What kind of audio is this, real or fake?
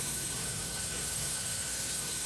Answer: fake